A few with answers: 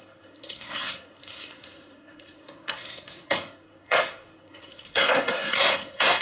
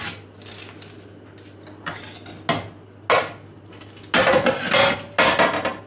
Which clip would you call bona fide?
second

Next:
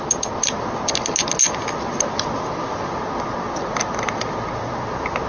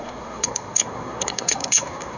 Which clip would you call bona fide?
first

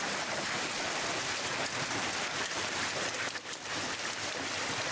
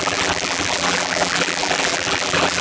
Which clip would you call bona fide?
first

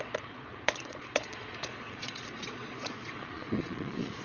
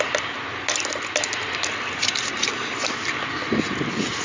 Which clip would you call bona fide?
second